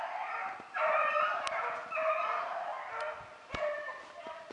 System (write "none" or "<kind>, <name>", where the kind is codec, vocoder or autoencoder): none